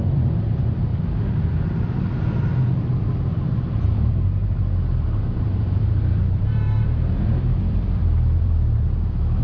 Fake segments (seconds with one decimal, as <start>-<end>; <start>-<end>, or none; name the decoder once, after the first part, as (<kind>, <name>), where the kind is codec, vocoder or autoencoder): 0.0-0.9 (vocoder, BigVGAN v2); 1.5-9.4